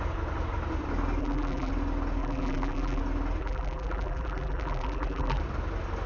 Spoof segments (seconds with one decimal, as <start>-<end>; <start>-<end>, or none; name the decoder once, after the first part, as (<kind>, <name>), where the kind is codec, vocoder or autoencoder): 1.2-1.7 (vocoder, BigVGAN v2); 2.2-3.0; 3.4-5.4

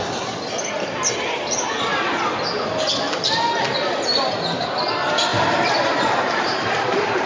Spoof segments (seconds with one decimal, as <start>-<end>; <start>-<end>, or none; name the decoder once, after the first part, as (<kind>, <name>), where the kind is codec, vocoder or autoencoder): 1.9-3.5 (vocoder, BigVGAN v2); 5.3-7.3